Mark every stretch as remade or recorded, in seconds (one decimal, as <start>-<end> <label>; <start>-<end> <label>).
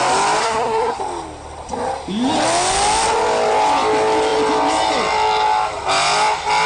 0.0-0.4 recorded; 0.4-1.0 remade; 1.0-6.7 recorded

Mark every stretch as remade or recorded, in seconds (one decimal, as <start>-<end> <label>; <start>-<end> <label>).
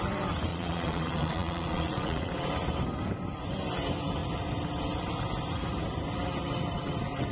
0.0-0.5 recorded; 0.5-2.3 remade; 2.3-7.3 recorded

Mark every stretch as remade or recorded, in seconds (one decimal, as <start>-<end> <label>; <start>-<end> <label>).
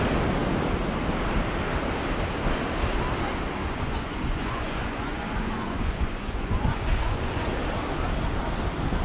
0.0-3.6 recorded; 3.6-7.5 remade; 7.5-9.0 recorded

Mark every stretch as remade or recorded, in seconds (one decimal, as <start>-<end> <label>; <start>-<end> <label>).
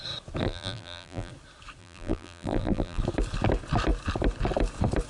0.0-0.4 recorded; 0.4-1.3 remade; 1.3-1.8 recorded; 1.8-3.0 remade; 3.0-5.1 recorded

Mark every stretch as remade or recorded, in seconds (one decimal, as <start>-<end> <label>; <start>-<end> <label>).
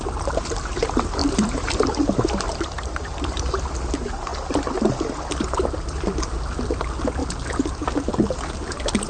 0.0-1.2 recorded; 1.2-1.8 remade; 1.8-9.1 recorded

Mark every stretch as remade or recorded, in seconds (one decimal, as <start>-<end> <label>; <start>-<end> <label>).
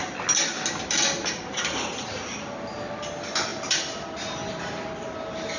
0.0-5.6 recorded